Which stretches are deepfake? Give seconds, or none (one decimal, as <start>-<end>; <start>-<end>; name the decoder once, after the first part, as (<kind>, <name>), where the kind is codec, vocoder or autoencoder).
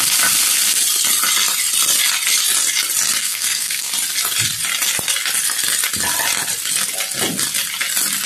3.2-3.9 (codec, SNAC)